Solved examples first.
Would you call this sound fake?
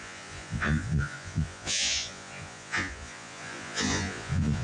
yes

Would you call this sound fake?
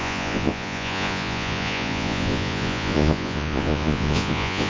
yes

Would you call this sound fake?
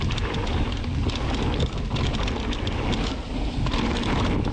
no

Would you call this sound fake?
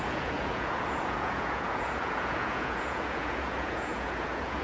yes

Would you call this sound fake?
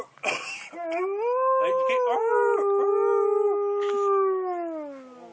no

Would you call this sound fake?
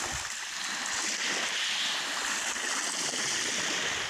no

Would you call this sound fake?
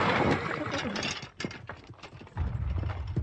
no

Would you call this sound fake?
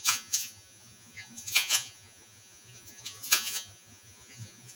yes